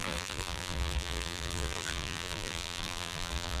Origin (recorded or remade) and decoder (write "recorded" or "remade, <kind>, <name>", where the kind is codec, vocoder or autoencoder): remade, vocoder, BigVGAN v2